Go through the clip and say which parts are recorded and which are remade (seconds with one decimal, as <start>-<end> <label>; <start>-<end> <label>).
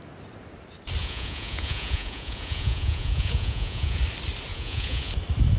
0.0-1.0 recorded; 1.0-4.0 remade; 4.0-4.5 recorded; 4.5-5.1 remade; 5.1-5.6 recorded